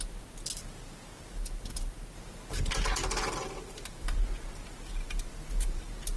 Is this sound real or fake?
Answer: real